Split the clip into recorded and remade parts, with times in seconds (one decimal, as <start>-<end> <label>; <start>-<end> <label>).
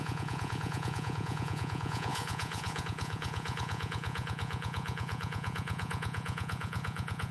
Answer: 0.0-7.3 remade